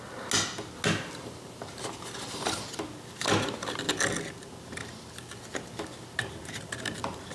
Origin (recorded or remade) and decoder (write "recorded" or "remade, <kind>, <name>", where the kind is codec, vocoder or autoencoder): recorded